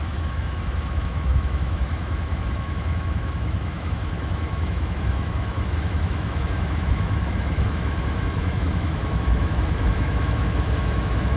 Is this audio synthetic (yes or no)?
yes